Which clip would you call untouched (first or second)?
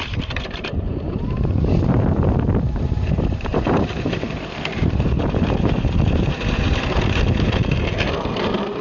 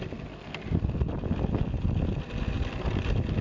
second